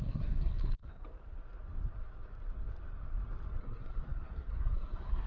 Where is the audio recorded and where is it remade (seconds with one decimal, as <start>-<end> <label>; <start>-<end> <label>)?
0.0-1.0 remade; 1.0-3.6 recorded; 3.6-5.3 remade